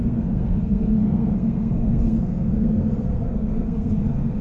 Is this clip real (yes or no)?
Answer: no